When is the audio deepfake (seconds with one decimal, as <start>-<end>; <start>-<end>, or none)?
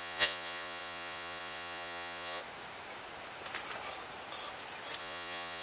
0.0-2.4; 5.0-5.6